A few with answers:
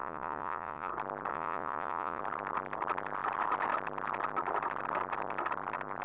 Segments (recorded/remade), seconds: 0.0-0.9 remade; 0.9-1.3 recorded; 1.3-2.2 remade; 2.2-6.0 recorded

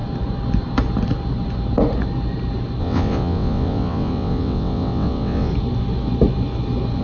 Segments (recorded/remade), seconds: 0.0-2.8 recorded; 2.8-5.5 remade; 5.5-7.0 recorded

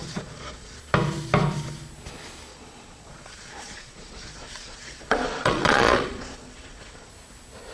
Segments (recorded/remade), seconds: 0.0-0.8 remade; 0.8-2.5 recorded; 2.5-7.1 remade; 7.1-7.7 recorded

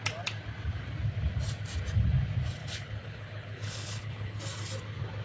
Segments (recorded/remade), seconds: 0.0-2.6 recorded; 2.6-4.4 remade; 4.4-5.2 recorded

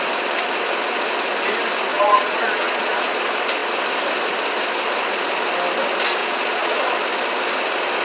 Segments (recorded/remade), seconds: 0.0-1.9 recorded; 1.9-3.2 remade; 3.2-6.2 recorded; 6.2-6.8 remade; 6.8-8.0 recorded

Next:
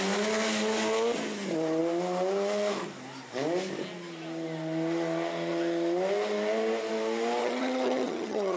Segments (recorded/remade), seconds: 0.0-7.4 recorded; 7.4-8.6 remade